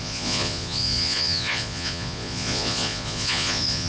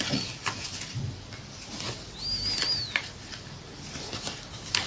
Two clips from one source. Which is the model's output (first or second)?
first